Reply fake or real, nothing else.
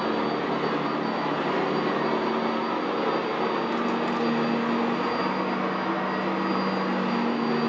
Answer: real